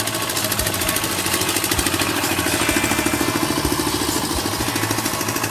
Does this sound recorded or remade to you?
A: recorded